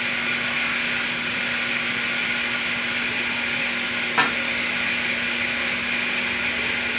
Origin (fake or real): real